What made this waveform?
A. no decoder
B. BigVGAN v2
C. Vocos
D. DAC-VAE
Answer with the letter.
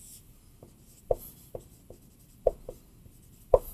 A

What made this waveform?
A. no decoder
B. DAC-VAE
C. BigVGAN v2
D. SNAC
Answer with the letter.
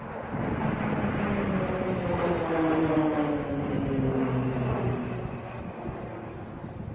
A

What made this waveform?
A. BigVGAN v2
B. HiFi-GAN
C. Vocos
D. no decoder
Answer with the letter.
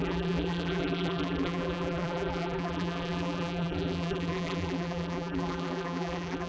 A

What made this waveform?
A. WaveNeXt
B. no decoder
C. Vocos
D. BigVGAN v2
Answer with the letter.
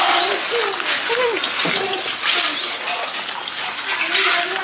B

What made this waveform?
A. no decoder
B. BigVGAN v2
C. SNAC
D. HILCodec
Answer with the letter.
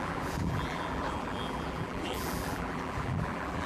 B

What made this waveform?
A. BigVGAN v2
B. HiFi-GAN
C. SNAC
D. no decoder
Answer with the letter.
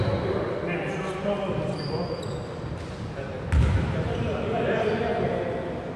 D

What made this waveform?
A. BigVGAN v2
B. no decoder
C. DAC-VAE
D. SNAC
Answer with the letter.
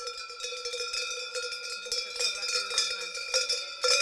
B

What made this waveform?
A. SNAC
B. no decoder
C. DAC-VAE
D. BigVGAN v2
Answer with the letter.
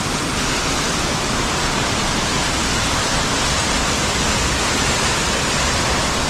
B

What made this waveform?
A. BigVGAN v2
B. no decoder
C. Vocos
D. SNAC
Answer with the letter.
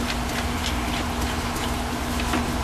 B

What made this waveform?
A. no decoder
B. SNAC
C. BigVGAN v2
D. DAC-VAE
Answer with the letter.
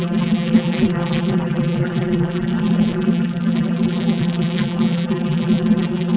C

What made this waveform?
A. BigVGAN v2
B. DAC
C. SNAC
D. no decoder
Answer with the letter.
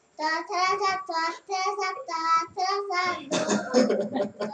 D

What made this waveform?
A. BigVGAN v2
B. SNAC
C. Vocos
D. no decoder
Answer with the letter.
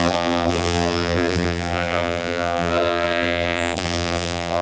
A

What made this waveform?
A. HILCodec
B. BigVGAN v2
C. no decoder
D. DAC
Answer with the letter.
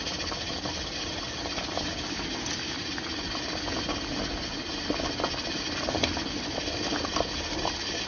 C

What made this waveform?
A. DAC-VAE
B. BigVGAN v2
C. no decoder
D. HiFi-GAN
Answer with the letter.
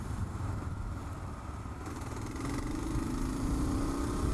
B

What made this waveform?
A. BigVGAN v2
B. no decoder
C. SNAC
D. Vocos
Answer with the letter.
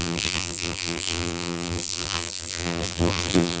A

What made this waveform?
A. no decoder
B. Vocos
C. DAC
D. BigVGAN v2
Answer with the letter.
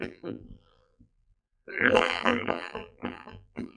D